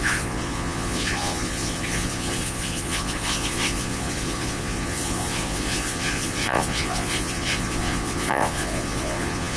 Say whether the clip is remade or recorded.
remade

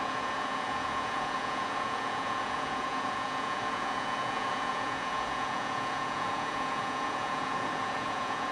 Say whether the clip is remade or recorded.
remade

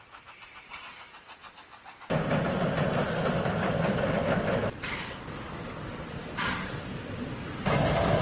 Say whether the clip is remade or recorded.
recorded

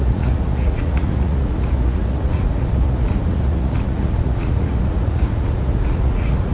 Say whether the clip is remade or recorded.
remade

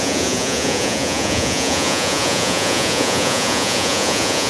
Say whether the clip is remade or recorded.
remade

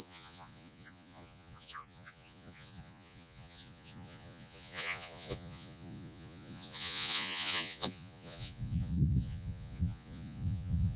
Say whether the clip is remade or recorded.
remade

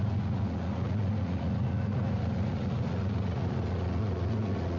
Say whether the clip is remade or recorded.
remade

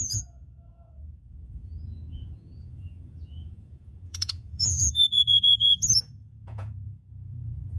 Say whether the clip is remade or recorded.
remade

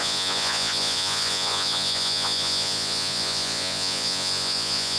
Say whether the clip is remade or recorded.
remade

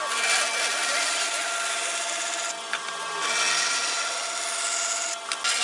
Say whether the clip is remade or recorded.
recorded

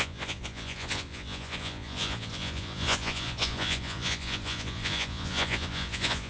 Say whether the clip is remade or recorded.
remade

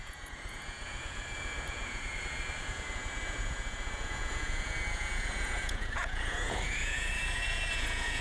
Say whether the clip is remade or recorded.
remade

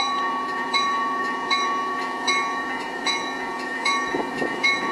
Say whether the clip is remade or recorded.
remade